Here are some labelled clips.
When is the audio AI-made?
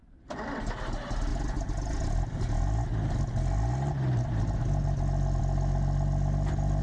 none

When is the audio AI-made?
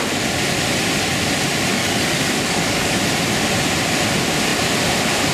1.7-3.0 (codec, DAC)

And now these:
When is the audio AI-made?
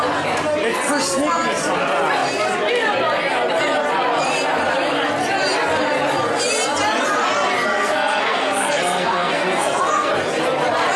7.7-10.1 (codec, SNAC)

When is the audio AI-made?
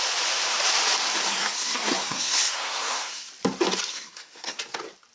1.3-3.3 (codec, SNAC); 3.9-4.6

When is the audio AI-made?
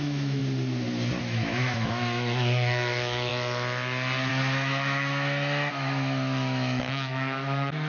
0.0-0.4 (autoencoder, DAC-VAE); 1.2-3.3; 4.3-7.9